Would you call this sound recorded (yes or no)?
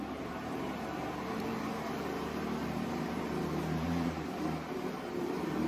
no